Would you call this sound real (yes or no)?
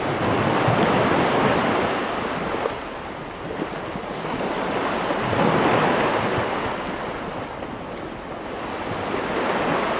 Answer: yes